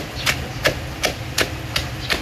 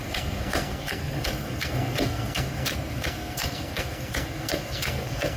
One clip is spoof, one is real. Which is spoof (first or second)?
second